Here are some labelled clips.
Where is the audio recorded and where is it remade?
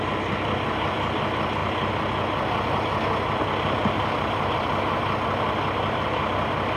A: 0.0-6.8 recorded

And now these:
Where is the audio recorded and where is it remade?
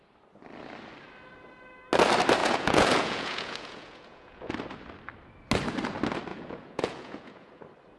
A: 0.0-2.4 recorded; 2.4-4.5 remade; 4.5-6.3 recorded; 6.3-7.6 remade; 7.6-8.0 recorded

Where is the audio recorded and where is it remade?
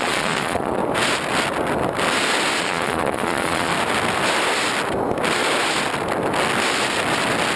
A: 0.0-0.8 remade; 0.8-2.6 recorded; 2.6-3.7 remade; 3.7-7.6 recorded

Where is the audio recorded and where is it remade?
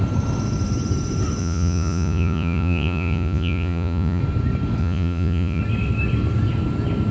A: 0.0-1.4 recorded; 1.4-4.2 remade; 4.2-4.8 recorded; 4.8-5.6 remade; 5.6-7.1 recorded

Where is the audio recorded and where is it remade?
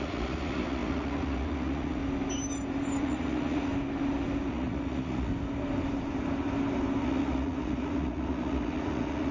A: 0.0-2.0 remade; 2.0-3.0 recorded; 3.0-3.7 remade; 3.7-4.5 recorded; 4.5-5.3 remade; 5.3-7.0 recorded; 7.0-9.3 remade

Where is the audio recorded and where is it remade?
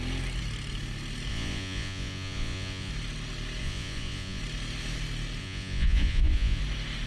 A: 0.0-1.3 recorded; 1.3-2.9 remade; 2.9-3.6 recorded; 3.6-4.4 remade; 4.4-5.4 recorded; 5.4-6.6 remade; 6.6-7.1 recorded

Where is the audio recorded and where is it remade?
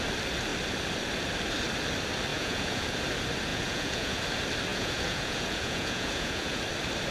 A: 0.0-2.3 recorded; 2.3-3.0 remade; 3.0-3.5 recorded; 3.5-4.2 remade; 4.2-4.7 recorded; 4.7-6.6 remade; 6.6-7.1 recorded